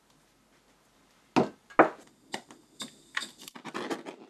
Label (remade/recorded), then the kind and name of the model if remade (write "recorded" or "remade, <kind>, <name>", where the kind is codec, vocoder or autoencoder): recorded